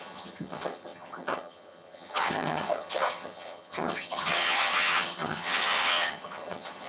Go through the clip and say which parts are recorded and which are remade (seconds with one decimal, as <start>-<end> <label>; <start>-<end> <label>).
0.0-6.9 remade